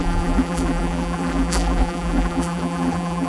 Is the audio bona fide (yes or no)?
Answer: no